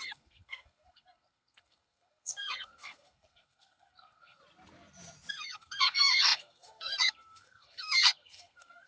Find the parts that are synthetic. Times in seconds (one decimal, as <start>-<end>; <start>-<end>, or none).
0.0-4.4; 5.3-8.9